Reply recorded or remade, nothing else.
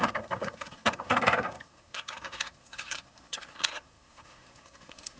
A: remade